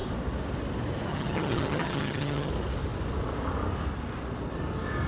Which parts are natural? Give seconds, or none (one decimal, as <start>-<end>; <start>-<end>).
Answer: 0.0-1.1; 2.5-5.1